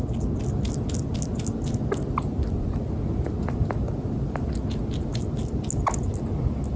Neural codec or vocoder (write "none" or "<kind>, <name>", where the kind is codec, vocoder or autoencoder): none